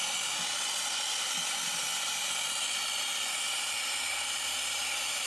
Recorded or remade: recorded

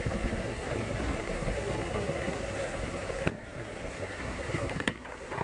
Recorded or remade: remade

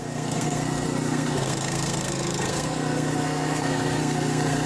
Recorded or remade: remade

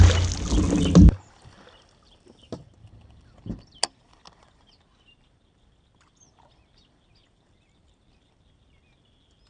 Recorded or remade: recorded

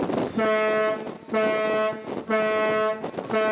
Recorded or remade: recorded